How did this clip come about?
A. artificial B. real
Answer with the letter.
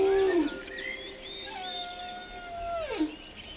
B